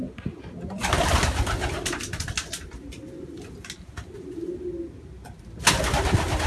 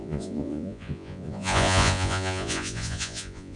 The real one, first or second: first